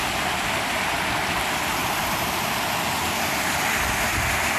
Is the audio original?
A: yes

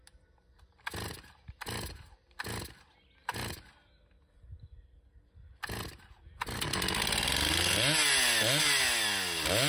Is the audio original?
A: yes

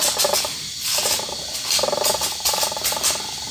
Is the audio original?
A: yes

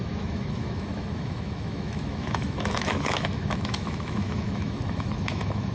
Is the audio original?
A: no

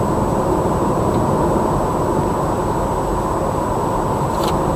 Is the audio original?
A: yes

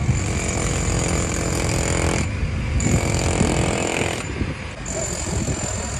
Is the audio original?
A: yes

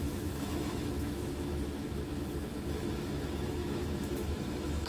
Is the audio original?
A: no